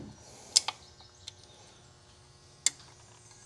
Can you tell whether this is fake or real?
real